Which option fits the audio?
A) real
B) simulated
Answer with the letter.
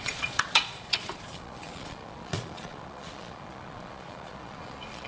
B